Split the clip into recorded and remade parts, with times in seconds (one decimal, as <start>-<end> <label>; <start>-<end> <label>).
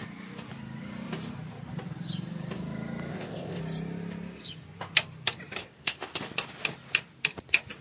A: 0.0-3.1 recorded; 3.1-3.6 remade; 3.6-5.6 recorded; 5.6-6.2 remade; 6.2-7.8 recorded